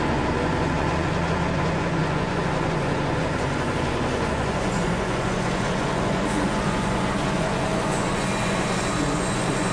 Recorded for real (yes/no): no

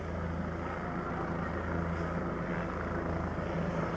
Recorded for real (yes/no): yes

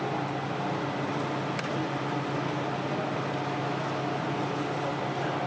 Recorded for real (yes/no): yes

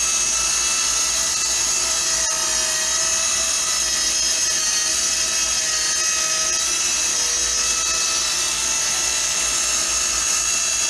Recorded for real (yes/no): yes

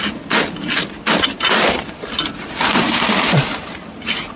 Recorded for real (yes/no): yes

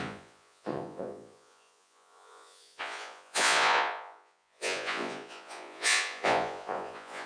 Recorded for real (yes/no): no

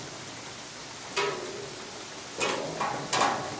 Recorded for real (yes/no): yes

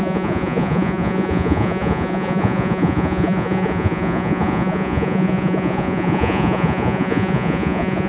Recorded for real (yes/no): no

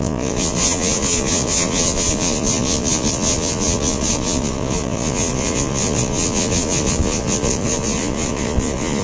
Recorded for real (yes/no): no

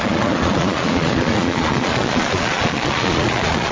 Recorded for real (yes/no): no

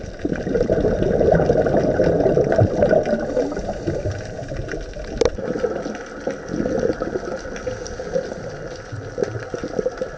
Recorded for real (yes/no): yes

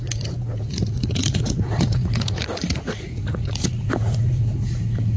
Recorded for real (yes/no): no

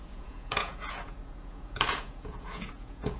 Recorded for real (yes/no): no